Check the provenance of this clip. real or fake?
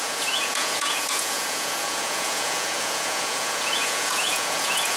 fake